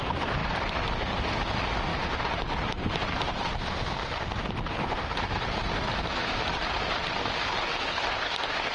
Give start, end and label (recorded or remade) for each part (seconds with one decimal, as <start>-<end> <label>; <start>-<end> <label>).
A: 0.0-0.4 recorded; 0.4-1.1 remade; 1.1-1.9 recorded; 1.9-6.9 remade; 6.9-8.7 recorded